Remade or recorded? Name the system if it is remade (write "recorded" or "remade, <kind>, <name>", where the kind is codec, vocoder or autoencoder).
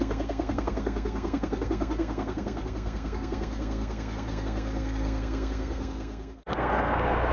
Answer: remade, codec, SNAC